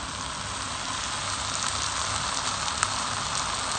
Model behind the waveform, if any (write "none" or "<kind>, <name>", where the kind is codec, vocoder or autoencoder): none